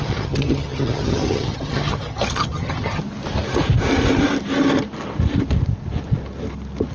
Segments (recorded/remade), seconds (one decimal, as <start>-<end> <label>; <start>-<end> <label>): 0.0-3.0 remade; 3.0-6.9 recorded